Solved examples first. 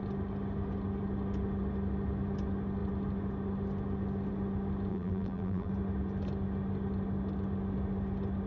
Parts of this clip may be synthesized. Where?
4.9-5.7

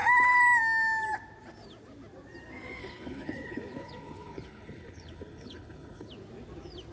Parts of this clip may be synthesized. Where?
2.8-6.1

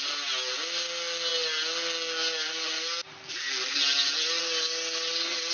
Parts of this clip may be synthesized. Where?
none

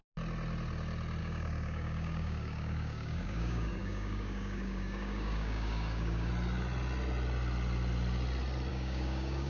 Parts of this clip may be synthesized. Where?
1.2-6.3; 8.7-9.5

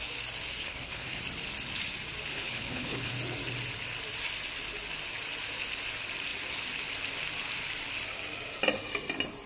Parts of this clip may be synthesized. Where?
0.6-1.2; 2.3-3.1